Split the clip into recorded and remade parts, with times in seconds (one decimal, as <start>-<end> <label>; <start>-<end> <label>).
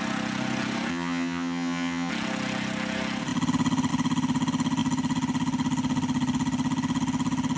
0.0-0.9 recorded; 0.9-2.1 remade; 2.1-7.6 recorded